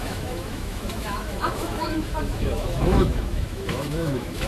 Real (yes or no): no